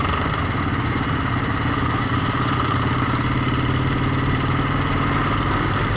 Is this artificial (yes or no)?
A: yes